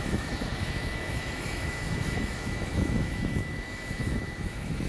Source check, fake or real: fake